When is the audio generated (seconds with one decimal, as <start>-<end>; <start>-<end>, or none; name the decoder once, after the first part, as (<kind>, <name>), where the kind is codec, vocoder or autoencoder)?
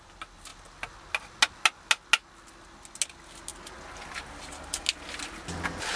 none